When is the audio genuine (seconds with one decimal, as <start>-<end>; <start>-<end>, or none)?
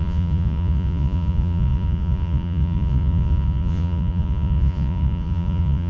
none